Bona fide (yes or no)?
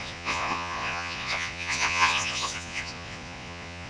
no